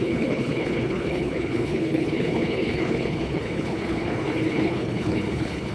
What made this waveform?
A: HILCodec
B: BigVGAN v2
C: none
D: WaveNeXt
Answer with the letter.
A